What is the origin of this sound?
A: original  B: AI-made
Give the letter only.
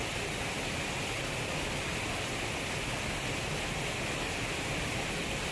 A